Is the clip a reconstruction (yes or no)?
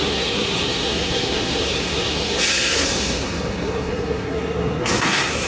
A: yes